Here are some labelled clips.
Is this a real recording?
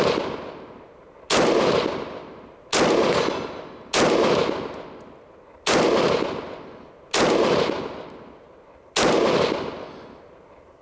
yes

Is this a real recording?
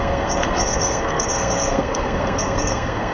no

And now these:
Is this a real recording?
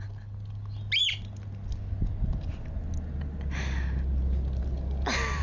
yes